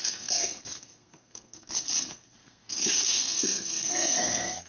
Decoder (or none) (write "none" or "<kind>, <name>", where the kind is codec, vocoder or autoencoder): codec, SNAC